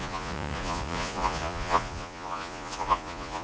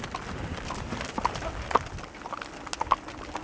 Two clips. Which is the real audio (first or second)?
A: second